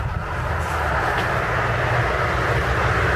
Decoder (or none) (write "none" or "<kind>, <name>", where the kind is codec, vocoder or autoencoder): none